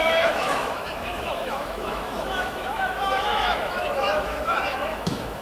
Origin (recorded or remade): remade